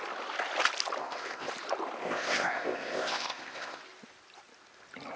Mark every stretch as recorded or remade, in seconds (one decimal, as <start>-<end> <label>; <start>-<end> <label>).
0.0-1.0 recorded; 1.0-1.5 remade; 1.5-2.0 recorded; 2.0-3.8 remade; 3.8-5.2 recorded